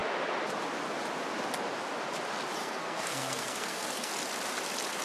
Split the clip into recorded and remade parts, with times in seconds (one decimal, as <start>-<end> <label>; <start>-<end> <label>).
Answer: 0.0-2.6 recorded; 2.6-4.1 remade; 4.1-5.0 recorded